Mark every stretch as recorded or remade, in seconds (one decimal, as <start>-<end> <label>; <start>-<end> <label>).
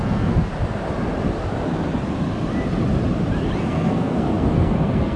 0.0-0.5 remade; 0.5-3.6 recorded; 3.6-5.2 remade